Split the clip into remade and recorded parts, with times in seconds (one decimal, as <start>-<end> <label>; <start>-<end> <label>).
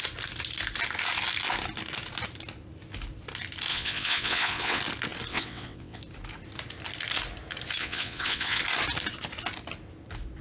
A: 0.0-3.7 recorded; 3.7-4.8 remade; 4.8-5.3 recorded; 5.3-6.0 remade; 6.0-7.8 recorded; 7.8-8.6 remade; 8.6-10.4 recorded